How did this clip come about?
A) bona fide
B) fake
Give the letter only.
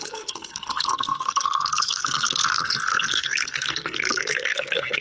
B